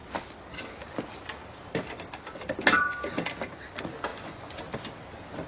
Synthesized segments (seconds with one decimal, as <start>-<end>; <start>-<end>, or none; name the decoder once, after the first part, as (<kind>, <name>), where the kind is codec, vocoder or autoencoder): 4.1-4.6 (vocoder, Vocos)